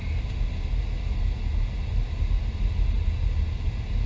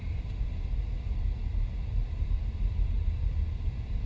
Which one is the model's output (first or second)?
second